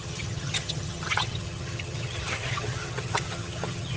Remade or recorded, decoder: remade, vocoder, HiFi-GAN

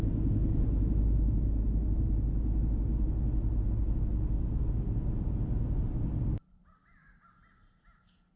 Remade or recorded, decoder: recorded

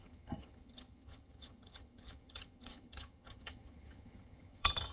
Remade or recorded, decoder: remade, vocoder, HiFi-GAN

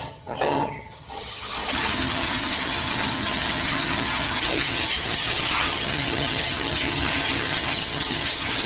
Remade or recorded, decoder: remade, vocoder, HiFi-GAN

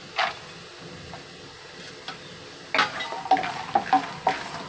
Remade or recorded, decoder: recorded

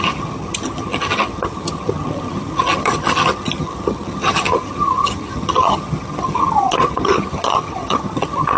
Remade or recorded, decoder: remade, vocoder, HiFi-GAN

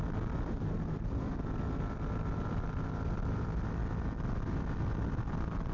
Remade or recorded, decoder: recorded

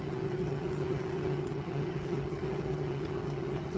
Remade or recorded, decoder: remade, vocoder, HiFi-GAN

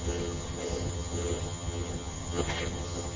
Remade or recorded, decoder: remade, vocoder, HiFi-GAN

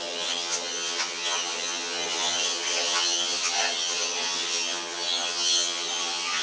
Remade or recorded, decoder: remade, vocoder, HiFi-GAN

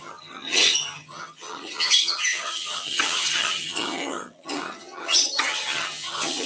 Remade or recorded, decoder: remade, vocoder, HiFi-GAN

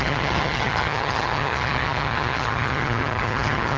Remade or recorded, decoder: remade, vocoder, HiFi-GAN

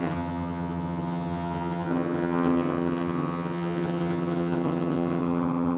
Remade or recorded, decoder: remade, vocoder, HiFi-GAN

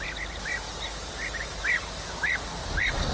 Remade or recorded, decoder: recorded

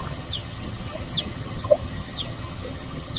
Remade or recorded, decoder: remade, vocoder, HiFi-GAN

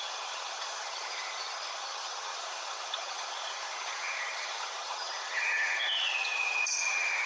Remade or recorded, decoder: remade, vocoder, HiFi-GAN